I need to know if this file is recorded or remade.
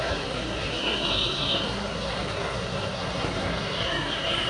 remade